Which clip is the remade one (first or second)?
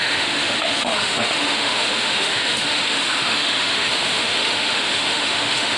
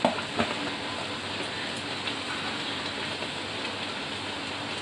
first